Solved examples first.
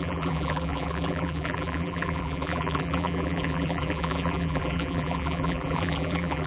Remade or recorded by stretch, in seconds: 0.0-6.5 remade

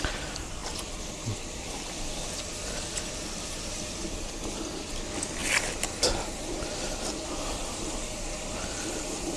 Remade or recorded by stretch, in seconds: 0.0-9.4 recorded

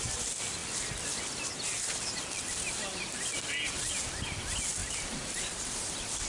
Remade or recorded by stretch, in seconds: 0.0-6.3 recorded

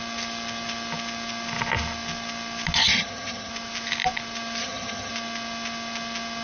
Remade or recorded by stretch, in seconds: 0.0-2.8 recorded; 2.8-3.5 remade; 3.5-4.6 recorded; 4.6-5.1 remade; 5.1-6.4 recorded

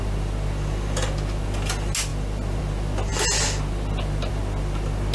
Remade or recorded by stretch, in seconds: 0.0-5.1 recorded

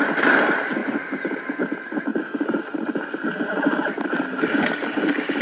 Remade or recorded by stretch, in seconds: 0.0-0.8 recorded; 0.8-1.4 remade; 1.4-2.1 recorded; 2.1-5.4 remade

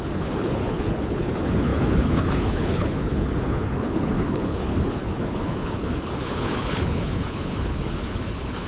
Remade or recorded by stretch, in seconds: 0.0-8.7 remade

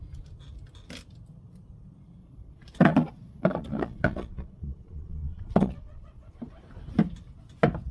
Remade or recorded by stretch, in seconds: 0.0-2.2 recorded; 2.2-6.3 remade; 6.3-7.9 recorded